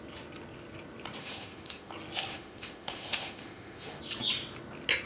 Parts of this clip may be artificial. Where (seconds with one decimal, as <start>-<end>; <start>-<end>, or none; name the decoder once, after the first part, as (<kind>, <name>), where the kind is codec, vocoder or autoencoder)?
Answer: 1.2-1.9 (autoencoder, DAC-VAE); 2.3-4.0